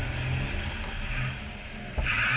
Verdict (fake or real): real